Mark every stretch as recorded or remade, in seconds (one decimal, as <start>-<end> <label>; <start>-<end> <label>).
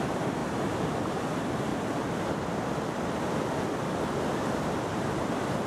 0.0-0.4 remade; 0.4-0.9 recorded; 0.9-1.7 remade; 1.7-3.3 recorded; 3.3-5.7 remade